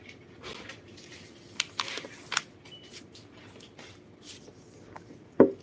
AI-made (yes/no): no